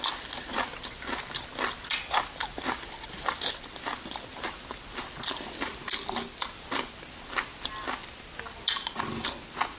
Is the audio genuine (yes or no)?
yes